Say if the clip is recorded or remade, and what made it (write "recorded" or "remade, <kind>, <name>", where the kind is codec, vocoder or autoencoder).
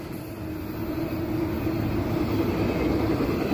recorded